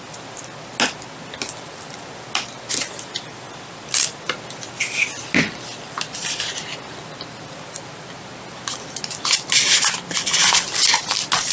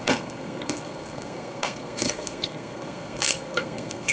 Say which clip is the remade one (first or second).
second